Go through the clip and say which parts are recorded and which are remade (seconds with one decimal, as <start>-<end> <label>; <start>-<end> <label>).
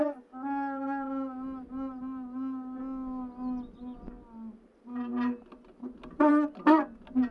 0.0-7.3 recorded